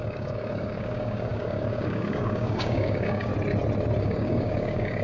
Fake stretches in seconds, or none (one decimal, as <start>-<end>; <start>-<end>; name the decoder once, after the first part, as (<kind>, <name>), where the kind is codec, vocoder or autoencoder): 0.0-3.3 (codec, DAC); 4.0-5.0